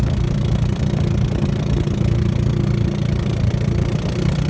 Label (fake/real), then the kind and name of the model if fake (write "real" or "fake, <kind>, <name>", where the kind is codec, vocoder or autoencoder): real